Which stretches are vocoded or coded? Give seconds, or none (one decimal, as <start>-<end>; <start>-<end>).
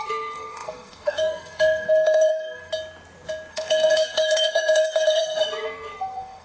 0.0-2.7; 3.5-6.4